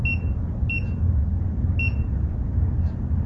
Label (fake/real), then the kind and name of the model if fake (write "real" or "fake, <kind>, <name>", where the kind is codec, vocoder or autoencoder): real